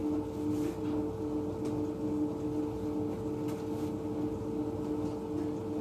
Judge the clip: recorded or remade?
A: recorded